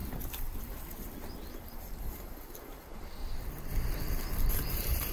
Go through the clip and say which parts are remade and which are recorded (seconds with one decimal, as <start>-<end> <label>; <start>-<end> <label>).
0.0-1.5 recorded; 1.5-3.2 remade; 3.2-4.5 recorded; 4.5-5.1 remade